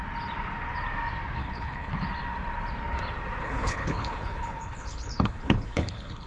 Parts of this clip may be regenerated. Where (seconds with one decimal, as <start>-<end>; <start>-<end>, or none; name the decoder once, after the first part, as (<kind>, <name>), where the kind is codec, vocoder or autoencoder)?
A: 1.4-1.9 (codec, HILCodec); 3.4-6.3